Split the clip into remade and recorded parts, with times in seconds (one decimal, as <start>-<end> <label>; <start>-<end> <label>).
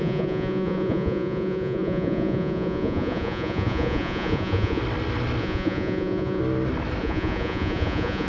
0.0-4.8 remade; 4.8-5.4 recorded; 5.4-6.4 remade; 6.4-7.0 recorded; 7.0-8.3 remade